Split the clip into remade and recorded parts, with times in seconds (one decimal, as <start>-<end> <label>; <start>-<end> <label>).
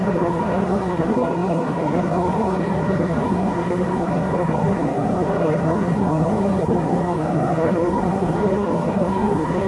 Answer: 0.0-9.7 remade